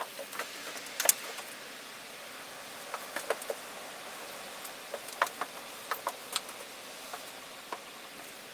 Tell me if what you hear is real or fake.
real